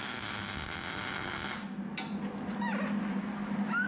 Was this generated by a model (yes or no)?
no